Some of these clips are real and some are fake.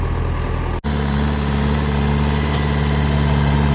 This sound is real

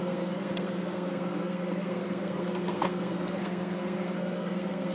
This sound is fake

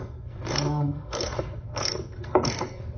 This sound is fake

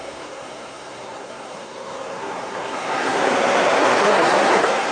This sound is fake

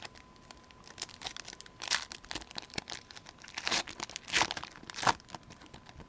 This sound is real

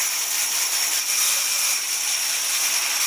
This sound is real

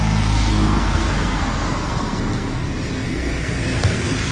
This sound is fake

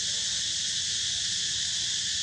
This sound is real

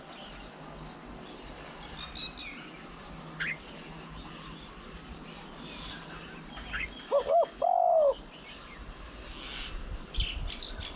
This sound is real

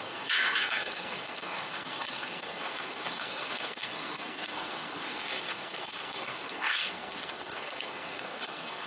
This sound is fake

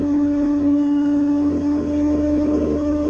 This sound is fake